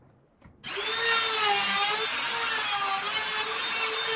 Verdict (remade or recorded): recorded